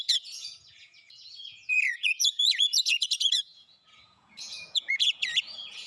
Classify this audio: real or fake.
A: fake